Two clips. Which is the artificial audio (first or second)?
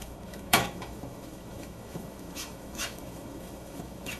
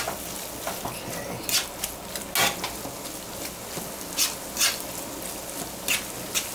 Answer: first